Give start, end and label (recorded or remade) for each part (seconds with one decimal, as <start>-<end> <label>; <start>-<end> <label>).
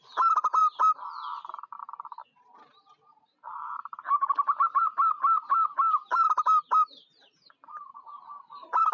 0.0-4.0 remade; 4.0-4.8 recorded; 4.8-8.9 remade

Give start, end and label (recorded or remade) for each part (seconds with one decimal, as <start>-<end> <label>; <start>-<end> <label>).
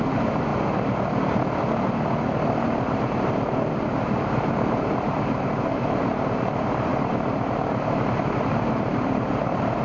0.0-0.5 remade; 0.5-2.6 recorded; 2.6-9.8 remade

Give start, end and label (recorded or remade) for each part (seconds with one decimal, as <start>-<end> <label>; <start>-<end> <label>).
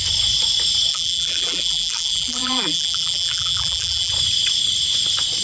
0.0-0.9 recorded; 0.9-4.1 remade; 4.1-5.4 recorded